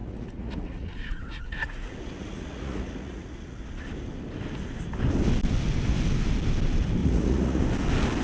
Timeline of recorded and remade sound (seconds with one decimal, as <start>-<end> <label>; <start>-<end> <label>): 0.0-3.6 remade; 3.6-7.0 recorded; 7.0-7.6 remade; 7.6-8.2 recorded